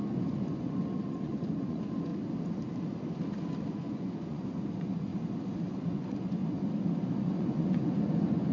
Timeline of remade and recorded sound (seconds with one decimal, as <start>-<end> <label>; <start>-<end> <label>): 0.0-2.1 remade; 2.1-3.7 recorded; 3.7-5.1 remade; 5.1-5.7 recorded; 5.7-6.4 remade; 6.4-7.2 recorded; 7.2-8.5 remade